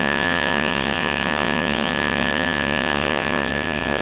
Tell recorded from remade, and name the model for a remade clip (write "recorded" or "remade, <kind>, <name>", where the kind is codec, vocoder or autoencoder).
remade, vocoder, WaveNeXt